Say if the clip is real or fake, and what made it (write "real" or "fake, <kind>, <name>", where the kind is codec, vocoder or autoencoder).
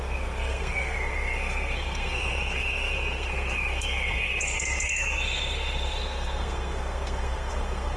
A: fake, codec, SNAC